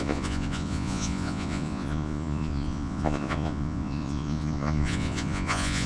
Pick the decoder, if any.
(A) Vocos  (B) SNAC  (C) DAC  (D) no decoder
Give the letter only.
A